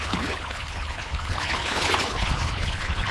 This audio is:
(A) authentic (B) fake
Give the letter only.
B